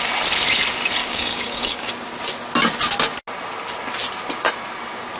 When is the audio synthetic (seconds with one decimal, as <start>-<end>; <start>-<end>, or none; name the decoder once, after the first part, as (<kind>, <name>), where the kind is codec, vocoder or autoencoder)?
1.0-1.9 (codec, DAC)